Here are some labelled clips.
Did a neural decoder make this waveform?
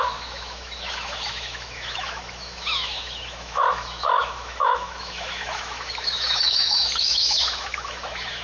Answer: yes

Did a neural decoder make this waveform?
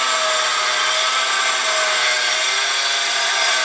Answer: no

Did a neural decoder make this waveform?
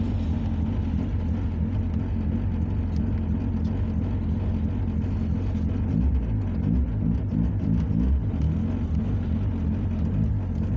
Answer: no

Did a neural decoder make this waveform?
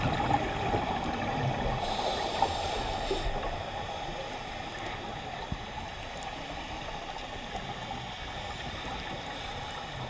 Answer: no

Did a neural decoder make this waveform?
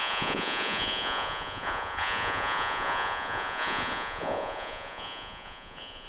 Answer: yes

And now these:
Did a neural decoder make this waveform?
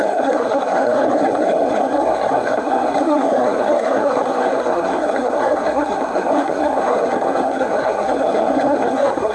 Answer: yes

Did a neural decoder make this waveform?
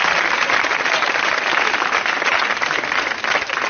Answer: no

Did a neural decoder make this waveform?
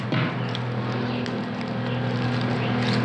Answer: no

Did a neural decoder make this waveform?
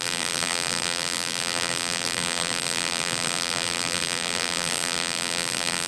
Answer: yes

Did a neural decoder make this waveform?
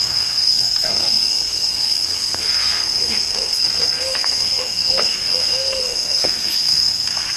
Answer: yes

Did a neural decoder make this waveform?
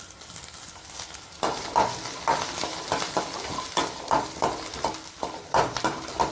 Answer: no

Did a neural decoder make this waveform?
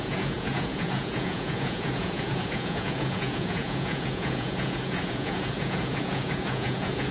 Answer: yes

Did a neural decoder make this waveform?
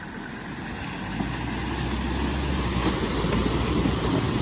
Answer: no